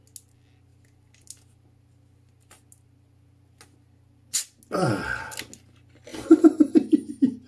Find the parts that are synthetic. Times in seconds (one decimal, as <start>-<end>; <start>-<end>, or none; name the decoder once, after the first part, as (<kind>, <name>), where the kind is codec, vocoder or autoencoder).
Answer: none